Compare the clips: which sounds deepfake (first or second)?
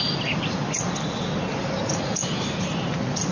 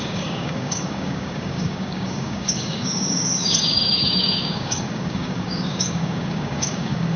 second